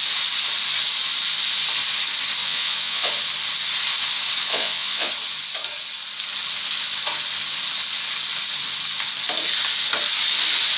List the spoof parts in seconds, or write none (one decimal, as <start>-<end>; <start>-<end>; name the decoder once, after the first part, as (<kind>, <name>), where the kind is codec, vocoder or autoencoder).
2.4-3.1 (vocoder, Vocos); 4.5-5.1